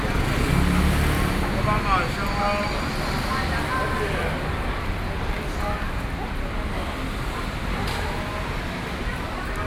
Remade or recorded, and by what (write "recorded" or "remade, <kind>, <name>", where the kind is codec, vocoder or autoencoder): recorded